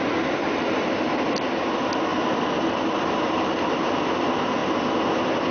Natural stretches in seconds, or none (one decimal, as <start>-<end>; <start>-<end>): 0.0-5.5